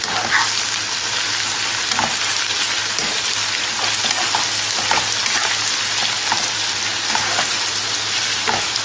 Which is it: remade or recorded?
recorded